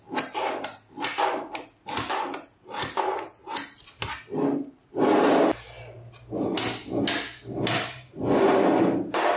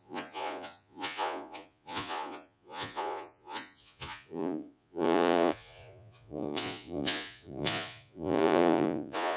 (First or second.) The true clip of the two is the first